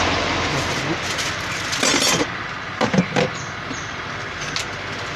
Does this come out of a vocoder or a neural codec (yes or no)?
no